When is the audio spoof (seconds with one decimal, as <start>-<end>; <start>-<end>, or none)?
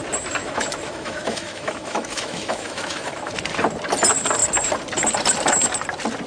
0.4-3.3